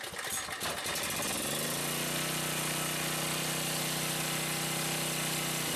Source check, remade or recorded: recorded